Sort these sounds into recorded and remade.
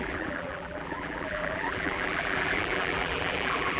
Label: remade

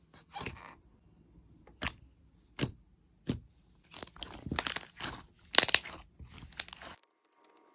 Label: recorded